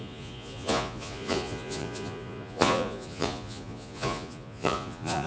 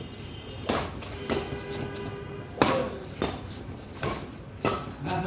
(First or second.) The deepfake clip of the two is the first